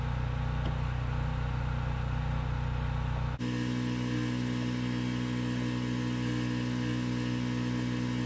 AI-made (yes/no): no